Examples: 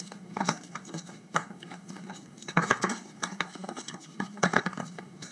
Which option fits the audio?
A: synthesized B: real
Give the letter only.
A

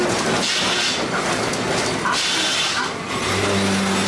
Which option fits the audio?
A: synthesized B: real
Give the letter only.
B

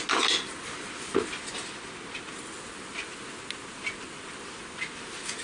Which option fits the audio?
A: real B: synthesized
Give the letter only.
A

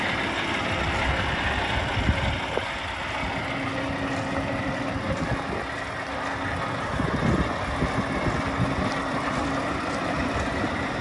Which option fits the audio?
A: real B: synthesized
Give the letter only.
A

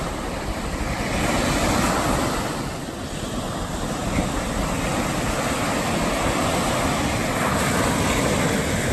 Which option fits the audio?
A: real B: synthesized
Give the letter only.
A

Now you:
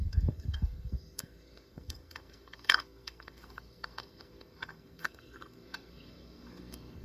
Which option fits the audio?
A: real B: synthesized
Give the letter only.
B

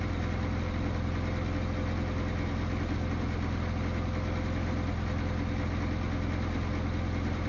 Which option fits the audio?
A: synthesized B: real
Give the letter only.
B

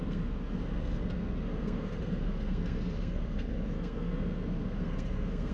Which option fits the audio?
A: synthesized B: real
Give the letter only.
A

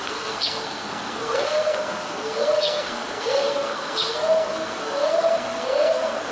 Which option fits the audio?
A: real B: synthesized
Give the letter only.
B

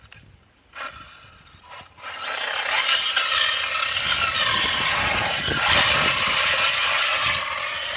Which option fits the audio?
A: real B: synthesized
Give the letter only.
A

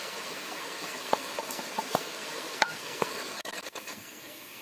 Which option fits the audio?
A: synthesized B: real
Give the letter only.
A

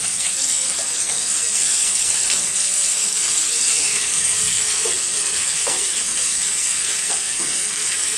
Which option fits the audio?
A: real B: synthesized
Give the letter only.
B